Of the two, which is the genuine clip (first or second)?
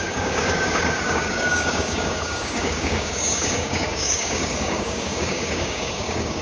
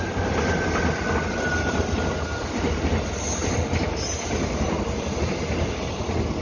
second